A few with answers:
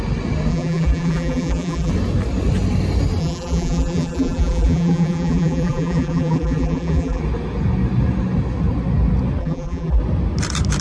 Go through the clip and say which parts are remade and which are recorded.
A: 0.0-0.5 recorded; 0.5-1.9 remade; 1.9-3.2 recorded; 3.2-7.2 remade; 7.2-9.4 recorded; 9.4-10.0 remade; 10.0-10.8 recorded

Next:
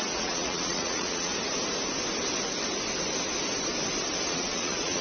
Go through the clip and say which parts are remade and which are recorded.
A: 0.0-1.3 remade; 1.3-4.3 recorded; 4.3-5.0 remade